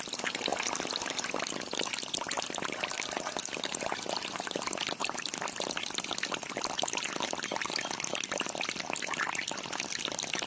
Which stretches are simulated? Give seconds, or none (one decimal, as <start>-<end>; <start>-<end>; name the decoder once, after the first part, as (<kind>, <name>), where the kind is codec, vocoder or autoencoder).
none